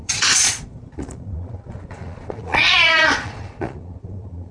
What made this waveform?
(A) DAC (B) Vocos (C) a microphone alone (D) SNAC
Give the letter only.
B